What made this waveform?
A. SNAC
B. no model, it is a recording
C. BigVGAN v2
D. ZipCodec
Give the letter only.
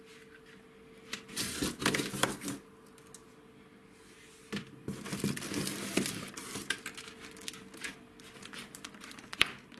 B